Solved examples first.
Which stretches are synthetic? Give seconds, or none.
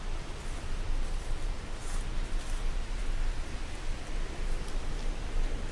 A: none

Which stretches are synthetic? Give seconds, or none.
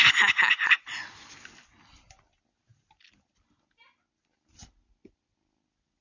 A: none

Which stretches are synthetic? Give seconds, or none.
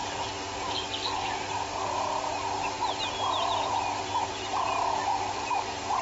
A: 5.1-6.0 (vocoder, BigVGAN v2)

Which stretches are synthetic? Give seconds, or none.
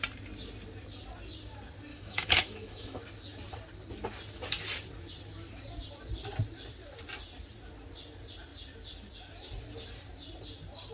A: 1.9-3.0 (autoencoder, DAC-VAE)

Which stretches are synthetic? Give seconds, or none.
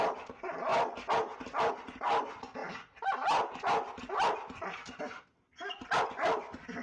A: none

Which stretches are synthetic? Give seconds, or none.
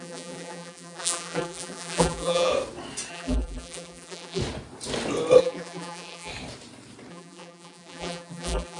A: 0.0-2.5 (vocoder, BigVGAN v2); 3.1-4.4; 5.4-6.3; 7.1-8.8